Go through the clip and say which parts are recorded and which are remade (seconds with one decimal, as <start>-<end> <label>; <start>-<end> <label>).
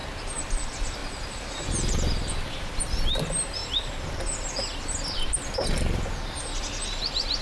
0.0-1.0 recorded; 1.0-2.8 remade; 2.8-7.4 recorded